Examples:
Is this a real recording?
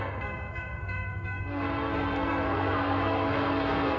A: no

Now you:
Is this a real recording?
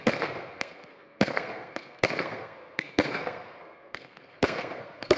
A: no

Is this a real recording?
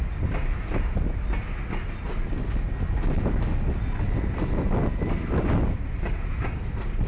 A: yes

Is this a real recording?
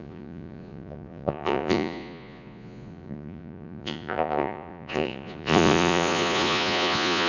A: no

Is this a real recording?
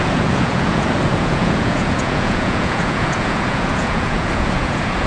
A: no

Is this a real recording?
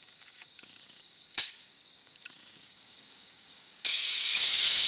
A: no